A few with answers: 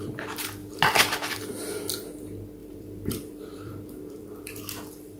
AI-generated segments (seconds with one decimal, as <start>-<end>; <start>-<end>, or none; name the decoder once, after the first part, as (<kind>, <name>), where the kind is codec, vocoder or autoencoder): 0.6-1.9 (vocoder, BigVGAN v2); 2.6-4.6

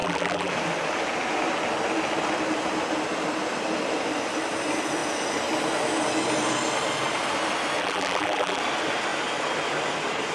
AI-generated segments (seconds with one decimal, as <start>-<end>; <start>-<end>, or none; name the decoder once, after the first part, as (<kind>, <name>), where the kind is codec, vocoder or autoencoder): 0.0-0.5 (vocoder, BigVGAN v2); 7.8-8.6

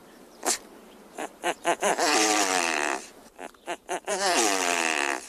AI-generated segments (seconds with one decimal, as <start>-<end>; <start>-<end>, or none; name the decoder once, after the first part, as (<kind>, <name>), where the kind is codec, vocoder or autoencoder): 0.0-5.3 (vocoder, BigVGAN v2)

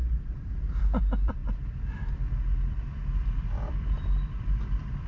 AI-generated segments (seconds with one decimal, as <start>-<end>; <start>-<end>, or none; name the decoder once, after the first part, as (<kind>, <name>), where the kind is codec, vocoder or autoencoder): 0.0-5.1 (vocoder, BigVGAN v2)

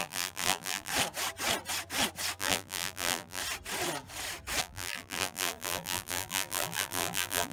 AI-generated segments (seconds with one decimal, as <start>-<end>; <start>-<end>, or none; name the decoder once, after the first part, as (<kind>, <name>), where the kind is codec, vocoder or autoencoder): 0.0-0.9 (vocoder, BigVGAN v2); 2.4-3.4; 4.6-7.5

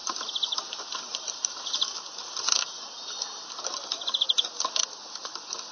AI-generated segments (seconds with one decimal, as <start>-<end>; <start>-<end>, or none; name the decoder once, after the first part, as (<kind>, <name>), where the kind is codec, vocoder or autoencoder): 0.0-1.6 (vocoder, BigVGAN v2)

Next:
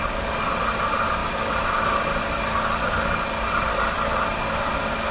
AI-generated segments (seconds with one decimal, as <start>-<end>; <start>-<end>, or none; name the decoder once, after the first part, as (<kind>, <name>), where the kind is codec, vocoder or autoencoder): none